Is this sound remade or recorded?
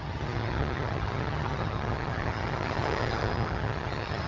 remade